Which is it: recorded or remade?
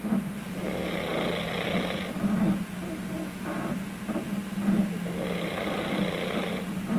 recorded